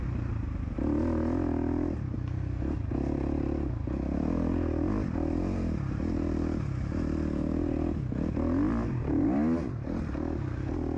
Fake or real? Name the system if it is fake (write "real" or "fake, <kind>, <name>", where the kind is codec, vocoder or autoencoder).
real